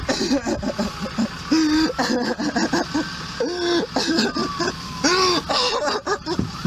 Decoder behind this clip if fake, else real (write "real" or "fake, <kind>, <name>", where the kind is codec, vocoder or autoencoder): real